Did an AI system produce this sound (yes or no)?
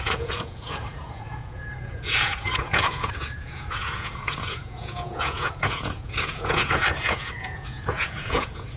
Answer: yes